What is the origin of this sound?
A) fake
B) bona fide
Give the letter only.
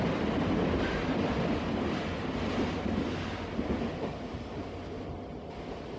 B